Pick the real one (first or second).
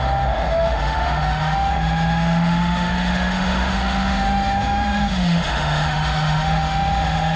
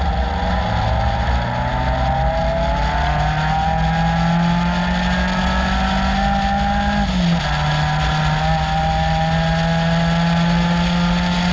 second